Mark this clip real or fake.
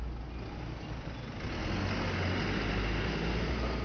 real